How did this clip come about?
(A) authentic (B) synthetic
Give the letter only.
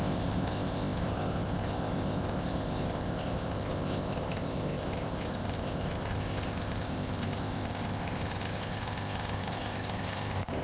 B